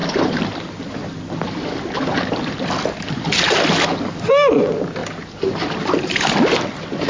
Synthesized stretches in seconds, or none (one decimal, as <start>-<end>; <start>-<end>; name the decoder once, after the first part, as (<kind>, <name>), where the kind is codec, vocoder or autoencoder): none